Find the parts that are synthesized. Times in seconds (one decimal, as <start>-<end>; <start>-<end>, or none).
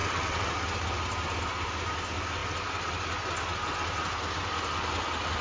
0.0-0.5